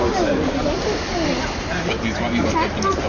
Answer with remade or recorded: recorded